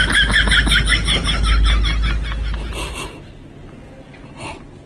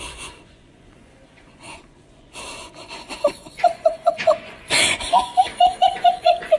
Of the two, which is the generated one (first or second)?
second